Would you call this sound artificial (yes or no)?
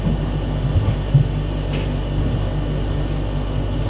no